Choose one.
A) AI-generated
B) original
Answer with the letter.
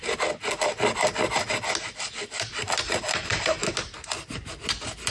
B